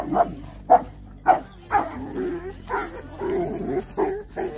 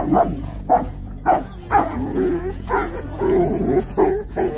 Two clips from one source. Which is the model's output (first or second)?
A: second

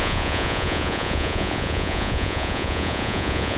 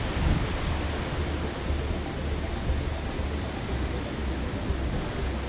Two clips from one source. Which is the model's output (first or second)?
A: first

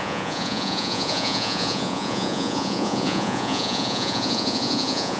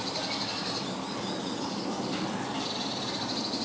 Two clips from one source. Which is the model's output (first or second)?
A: first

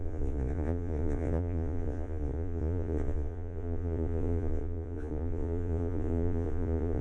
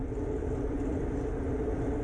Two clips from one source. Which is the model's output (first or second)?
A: first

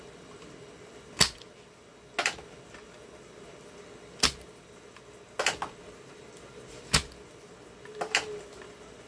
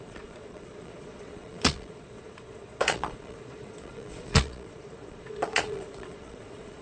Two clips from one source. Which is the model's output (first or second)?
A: second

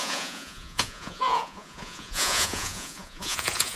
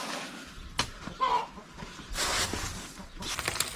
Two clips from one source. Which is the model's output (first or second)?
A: first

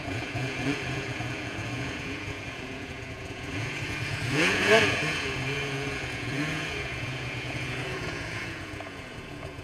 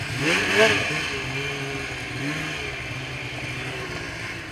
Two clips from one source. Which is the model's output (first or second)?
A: first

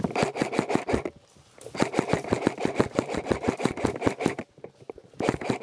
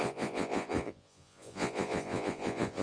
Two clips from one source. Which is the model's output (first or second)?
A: second